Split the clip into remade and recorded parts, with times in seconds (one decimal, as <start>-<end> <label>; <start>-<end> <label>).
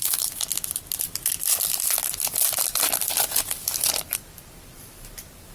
0.0-5.5 recorded